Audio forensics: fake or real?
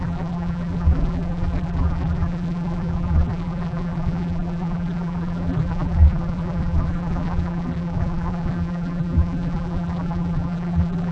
fake